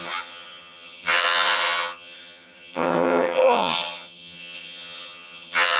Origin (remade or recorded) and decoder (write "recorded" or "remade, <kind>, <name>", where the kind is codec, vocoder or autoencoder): remade, vocoder, HiFi-GAN